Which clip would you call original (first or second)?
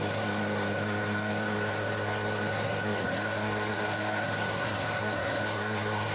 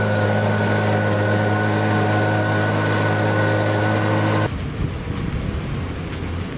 second